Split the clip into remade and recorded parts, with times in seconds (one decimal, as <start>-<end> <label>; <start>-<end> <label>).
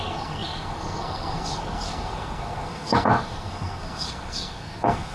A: 0.0-5.1 remade